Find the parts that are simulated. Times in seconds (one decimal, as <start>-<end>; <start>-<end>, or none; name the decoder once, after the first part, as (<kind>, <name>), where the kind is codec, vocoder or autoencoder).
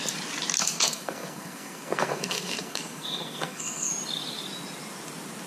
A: 0.6-3.9 (codec, SNAC)